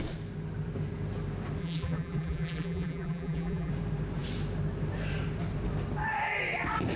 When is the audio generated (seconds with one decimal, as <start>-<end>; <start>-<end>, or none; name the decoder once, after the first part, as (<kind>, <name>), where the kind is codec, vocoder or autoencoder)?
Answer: 1.6-3.7 (vocoder, BigVGAN v2)